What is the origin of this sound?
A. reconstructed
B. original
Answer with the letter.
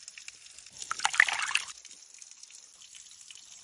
B